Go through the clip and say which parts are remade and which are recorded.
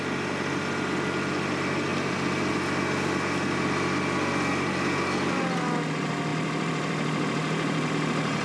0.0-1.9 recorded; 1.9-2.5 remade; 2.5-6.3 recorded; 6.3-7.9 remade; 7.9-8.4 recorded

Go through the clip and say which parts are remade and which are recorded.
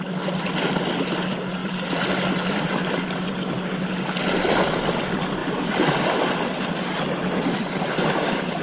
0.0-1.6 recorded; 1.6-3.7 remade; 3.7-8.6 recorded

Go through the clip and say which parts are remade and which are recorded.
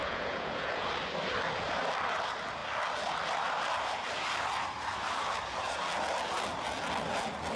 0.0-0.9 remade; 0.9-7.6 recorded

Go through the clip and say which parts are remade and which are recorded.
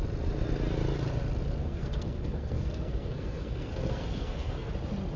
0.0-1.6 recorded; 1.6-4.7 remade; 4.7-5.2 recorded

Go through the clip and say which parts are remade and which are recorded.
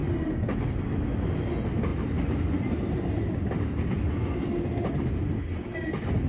0.0-1.9 recorded; 1.9-3.6 remade; 3.6-6.3 recorded